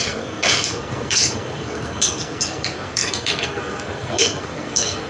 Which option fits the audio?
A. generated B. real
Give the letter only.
A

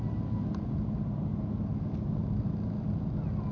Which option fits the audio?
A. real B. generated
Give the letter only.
A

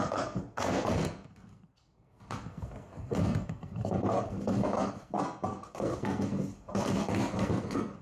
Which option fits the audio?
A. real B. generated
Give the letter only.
B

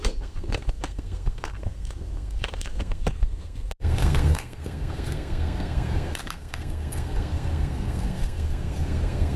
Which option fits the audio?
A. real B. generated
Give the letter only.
B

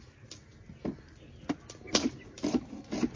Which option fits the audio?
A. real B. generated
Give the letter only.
A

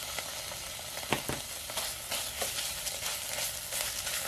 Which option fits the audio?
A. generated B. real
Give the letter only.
B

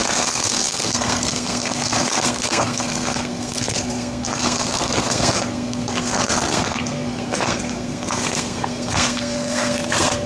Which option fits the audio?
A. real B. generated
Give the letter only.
B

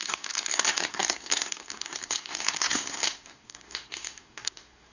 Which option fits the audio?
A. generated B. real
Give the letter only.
A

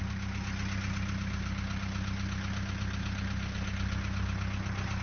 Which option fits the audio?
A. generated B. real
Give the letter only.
B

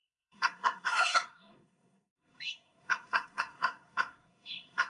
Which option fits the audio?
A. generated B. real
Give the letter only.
A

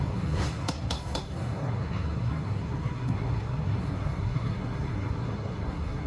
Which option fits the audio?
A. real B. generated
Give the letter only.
B